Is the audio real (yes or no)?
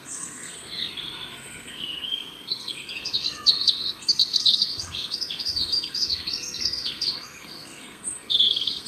no